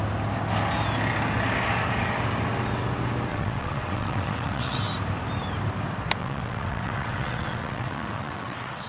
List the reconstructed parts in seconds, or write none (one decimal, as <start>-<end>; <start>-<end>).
3.3-4.8; 6.2-8.9